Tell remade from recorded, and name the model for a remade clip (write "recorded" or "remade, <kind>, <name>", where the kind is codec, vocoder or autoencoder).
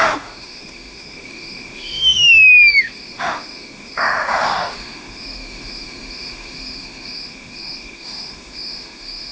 remade, autoencoder, DAC-VAE